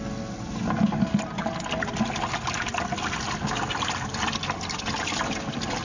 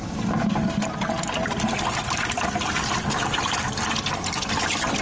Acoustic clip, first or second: first